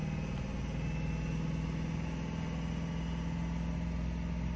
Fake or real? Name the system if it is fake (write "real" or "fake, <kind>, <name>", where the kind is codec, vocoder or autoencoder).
real